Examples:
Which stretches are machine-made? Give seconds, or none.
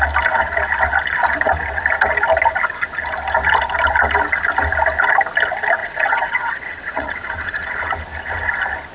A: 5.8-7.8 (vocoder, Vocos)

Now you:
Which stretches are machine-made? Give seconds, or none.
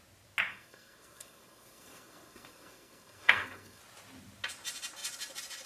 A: 0.5-3.8 (codec, SNAC)